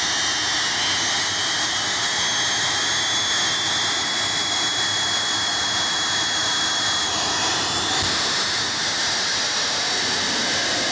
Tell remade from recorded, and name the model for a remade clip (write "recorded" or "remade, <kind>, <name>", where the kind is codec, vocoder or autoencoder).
recorded